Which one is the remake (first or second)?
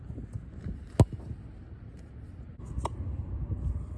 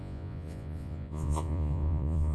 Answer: second